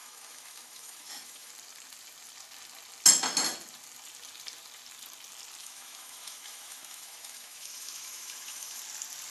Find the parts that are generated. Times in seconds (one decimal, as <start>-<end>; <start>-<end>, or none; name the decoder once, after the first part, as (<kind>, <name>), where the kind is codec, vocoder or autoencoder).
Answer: 0.0-1.5 (autoencoder, DAC-VAE); 5.6-8.8